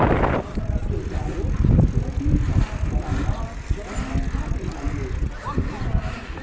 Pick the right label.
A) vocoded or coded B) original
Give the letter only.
B